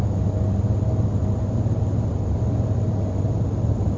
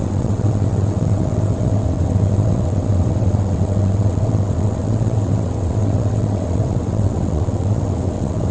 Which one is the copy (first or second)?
second